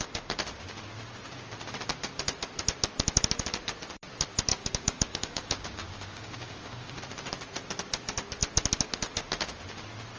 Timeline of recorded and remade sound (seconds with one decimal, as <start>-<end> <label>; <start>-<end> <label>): 0.0-4.5 recorded; 4.5-7.0 remade; 7.0-10.2 recorded